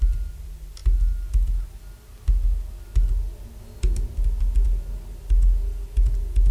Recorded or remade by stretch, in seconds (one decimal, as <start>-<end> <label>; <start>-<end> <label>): 0.0-6.5 recorded